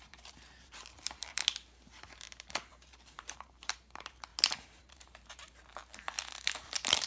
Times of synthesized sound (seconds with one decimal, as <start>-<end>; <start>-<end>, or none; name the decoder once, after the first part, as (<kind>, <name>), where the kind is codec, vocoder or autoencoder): 0.0-1.4 (vocoder, BigVGAN v2); 2.7-4.3; 4.8-7.1